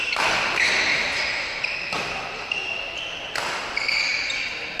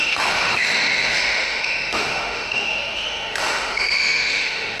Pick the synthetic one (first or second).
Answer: second